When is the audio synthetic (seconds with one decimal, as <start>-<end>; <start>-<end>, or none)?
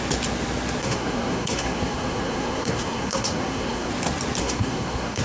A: 0.8-3.9; 4.4-5.2